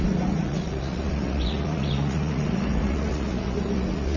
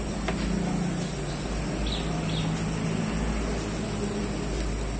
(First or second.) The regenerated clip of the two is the first